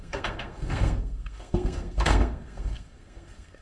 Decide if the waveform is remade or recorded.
remade